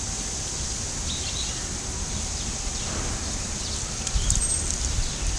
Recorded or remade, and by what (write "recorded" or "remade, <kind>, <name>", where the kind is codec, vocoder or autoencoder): recorded